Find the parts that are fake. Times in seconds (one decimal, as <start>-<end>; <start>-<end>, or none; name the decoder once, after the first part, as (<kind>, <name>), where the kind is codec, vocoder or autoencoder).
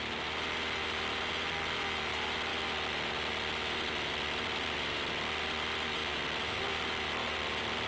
none